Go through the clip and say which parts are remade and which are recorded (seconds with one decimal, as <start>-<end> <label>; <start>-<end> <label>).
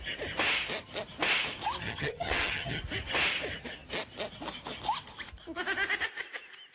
0.0-1.8 recorded; 1.8-2.8 remade; 2.8-6.7 recorded